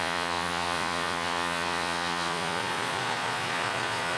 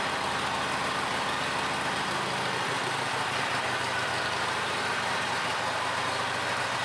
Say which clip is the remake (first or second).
first